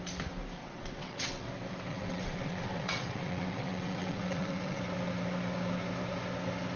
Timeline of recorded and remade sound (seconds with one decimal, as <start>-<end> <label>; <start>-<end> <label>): 0.0-0.6 recorded; 0.6-1.5 remade; 1.5-1.9 recorded; 1.9-4.8 remade; 4.8-6.8 recorded